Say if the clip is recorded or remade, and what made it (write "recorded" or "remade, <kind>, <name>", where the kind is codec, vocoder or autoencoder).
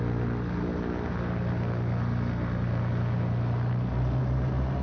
recorded